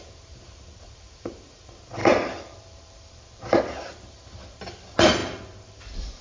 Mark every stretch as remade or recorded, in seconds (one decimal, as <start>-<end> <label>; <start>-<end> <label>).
0.0-2.0 recorded; 2.0-3.6 remade; 3.6-6.2 recorded